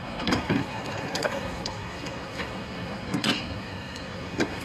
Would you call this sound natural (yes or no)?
no